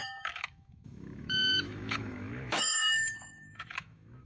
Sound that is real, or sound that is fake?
fake